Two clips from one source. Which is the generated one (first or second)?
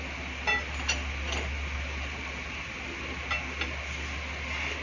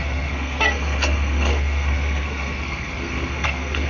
second